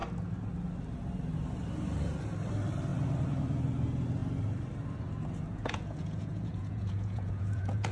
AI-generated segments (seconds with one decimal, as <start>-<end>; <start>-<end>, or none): 5.5-7.9